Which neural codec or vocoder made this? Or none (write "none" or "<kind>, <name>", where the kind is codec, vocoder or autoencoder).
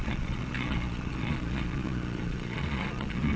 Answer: vocoder, Vocos